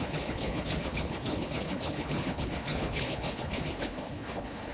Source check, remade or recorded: remade